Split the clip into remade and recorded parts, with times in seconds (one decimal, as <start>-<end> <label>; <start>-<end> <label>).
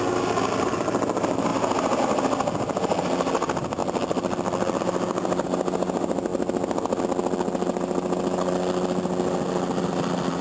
0.0-10.4 recorded